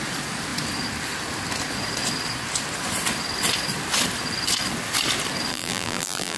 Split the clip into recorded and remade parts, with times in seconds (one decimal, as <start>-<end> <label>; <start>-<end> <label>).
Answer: 0.0-5.5 recorded; 5.5-6.4 remade